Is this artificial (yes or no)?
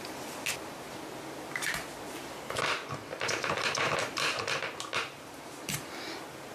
no